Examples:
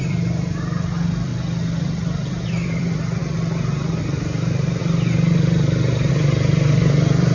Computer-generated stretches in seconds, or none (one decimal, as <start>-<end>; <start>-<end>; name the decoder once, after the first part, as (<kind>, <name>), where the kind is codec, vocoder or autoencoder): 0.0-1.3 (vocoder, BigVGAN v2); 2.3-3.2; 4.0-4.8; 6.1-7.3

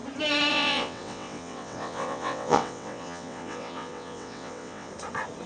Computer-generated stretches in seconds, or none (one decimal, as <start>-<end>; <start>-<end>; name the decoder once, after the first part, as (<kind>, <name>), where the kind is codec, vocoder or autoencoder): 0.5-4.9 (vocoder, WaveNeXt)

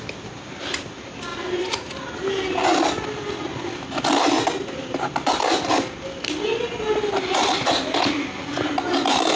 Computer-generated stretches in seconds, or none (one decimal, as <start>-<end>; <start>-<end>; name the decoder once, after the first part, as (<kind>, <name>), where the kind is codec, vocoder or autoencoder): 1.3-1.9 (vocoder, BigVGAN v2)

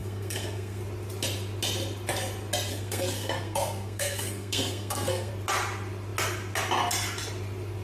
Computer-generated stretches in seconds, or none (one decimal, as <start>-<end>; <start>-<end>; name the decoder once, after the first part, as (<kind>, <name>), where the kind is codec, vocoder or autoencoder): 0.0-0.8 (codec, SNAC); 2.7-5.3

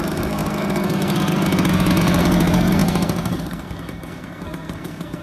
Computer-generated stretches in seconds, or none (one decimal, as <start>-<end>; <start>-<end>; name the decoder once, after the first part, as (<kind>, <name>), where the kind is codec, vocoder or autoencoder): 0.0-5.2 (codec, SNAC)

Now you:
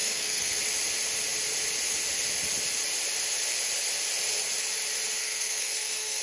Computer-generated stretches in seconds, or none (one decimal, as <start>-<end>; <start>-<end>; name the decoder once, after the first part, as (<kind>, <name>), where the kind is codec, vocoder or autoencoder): 0.0-0.6 (codec, SNAC); 5.2-6.2

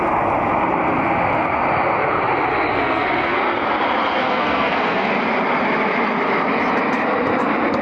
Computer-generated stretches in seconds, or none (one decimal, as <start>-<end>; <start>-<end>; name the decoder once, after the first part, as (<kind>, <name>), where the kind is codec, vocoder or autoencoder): 2.7-3.4 (codec, SNAC); 4.2-5.1